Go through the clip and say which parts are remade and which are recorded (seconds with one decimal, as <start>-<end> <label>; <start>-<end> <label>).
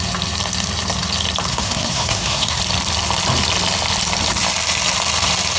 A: 0.0-1.5 recorded; 1.5-2.6 remade; 2.6-5.6 recorded